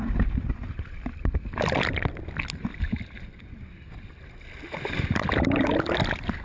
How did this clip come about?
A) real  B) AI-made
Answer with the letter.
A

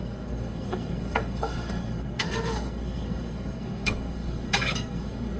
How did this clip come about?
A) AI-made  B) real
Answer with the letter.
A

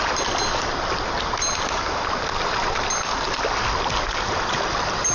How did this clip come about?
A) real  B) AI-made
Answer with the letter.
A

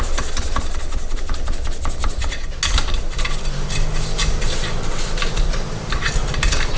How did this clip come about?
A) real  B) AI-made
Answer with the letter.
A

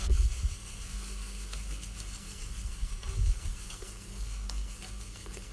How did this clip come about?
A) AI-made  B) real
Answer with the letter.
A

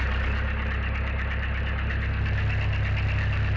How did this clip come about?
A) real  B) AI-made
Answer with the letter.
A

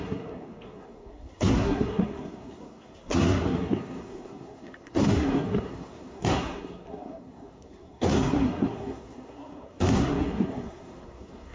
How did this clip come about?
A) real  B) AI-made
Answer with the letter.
B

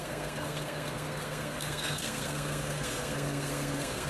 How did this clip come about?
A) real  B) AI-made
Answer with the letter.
B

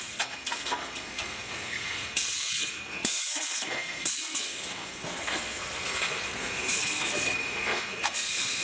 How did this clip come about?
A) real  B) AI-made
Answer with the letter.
B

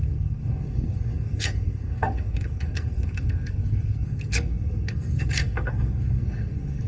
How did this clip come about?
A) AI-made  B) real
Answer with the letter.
A